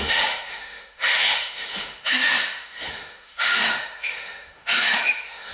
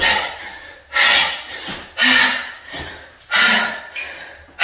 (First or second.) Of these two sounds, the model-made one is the first